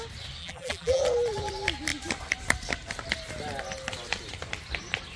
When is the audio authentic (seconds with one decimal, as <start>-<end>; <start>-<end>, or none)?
0.0-0.4; 1.0-5.2